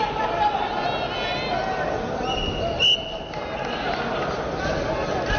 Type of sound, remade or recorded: recorded